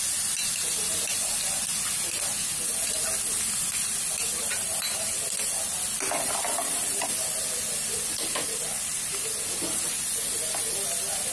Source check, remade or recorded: recorded